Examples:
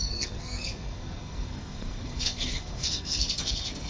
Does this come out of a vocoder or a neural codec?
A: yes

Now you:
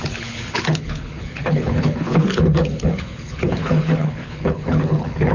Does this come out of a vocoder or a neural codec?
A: yes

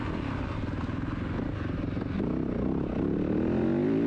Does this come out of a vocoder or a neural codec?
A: no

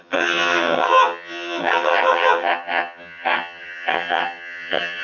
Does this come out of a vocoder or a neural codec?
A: yes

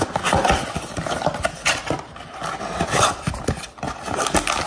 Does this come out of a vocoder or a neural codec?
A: no